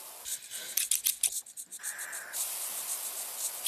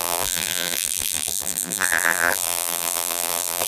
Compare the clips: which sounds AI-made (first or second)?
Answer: second